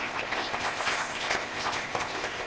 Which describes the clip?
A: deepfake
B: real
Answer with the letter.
A